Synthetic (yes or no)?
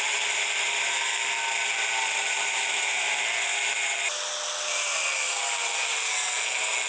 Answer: no